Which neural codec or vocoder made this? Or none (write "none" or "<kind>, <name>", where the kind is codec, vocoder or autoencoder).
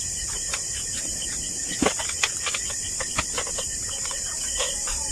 vocoder, BigVGAN v2